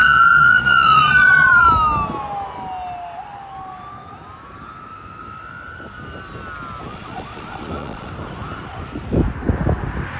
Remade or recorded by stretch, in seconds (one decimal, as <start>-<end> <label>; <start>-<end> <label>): 0.0-1.7 remade; 1.7-6.9 recorded; 6.9-8.1 remade; 8.1-10.2 recorded